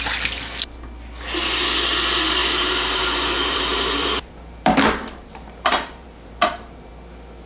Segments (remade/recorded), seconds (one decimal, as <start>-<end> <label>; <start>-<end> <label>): 0.0-2.4 recorded; 2.4-6.9 remade; 6.9-7.5 recorded